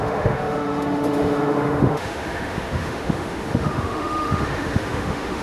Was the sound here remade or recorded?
remade